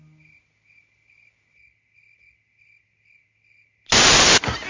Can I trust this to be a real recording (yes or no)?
yes